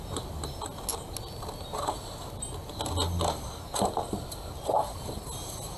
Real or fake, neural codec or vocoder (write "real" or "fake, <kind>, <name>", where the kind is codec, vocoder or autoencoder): real